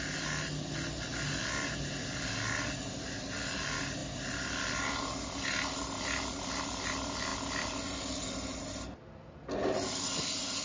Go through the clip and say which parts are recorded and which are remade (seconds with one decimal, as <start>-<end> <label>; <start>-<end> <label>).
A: 0.0-10.6 recorded